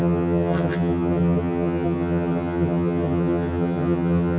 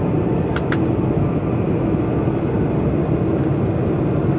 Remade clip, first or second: first